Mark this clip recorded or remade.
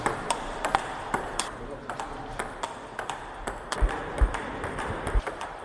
remade